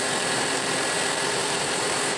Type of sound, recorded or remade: remade